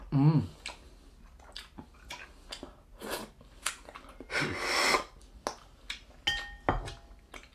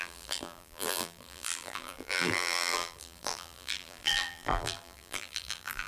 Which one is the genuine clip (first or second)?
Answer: first